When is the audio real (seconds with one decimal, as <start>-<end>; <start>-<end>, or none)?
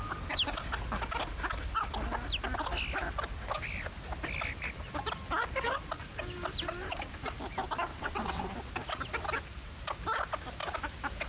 0.0-7.9; 8.5-11.3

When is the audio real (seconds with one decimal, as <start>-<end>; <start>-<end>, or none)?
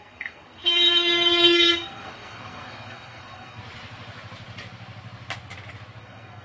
3.6-6.0